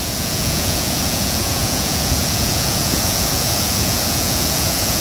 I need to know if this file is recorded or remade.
remade